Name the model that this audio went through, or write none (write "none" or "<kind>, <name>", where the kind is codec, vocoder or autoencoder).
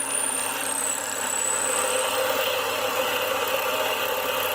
vocoder, BigVGAN v2